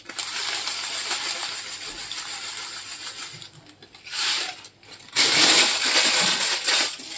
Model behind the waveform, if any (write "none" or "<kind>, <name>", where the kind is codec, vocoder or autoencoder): vocoder, BigVGAN v2